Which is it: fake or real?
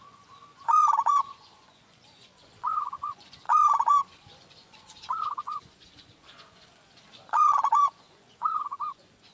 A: fake